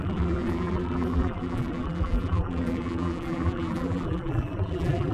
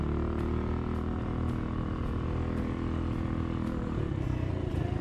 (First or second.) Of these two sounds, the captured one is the second